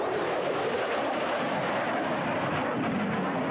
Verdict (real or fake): real